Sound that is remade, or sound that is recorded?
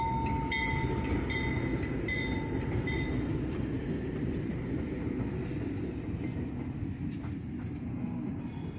recorded